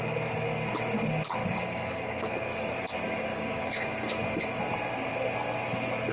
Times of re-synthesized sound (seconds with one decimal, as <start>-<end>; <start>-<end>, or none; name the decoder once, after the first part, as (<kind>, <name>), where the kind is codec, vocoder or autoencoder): 1.4-2.7 (codec, DAC); 3.3-4.6